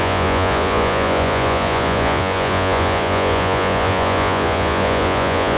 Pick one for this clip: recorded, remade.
remade